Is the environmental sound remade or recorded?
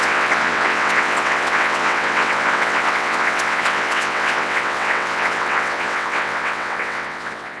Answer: remade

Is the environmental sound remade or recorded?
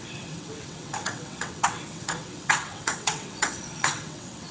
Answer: remade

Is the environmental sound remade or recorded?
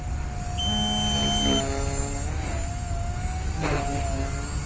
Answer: recorded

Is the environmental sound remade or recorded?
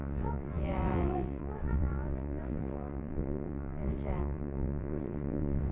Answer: remade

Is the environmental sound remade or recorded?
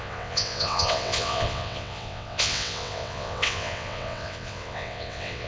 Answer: remade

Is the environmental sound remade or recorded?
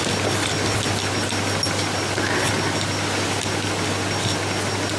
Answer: recorded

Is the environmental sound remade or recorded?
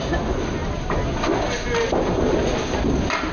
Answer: recorded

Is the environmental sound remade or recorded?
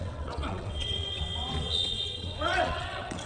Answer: remade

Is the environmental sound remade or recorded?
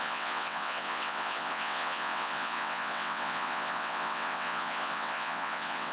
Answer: remade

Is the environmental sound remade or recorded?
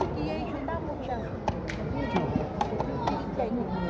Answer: recorded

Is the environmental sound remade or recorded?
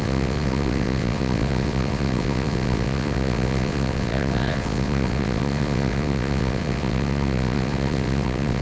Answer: remade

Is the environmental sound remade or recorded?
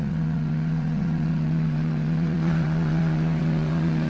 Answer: remade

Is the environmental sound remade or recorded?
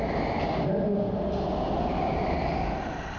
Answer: recorded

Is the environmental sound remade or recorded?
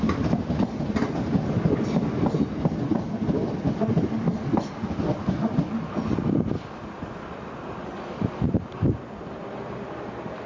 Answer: recorded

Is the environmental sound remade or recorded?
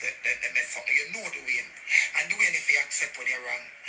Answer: recorded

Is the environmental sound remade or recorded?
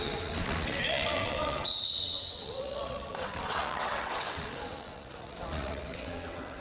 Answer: remade